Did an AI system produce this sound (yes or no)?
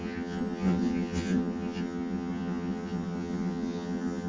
yes